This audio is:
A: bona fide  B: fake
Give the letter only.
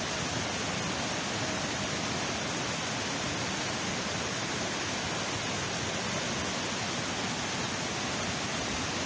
A